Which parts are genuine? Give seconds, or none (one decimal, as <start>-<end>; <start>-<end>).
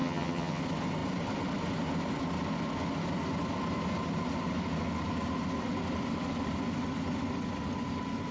0.6-8.3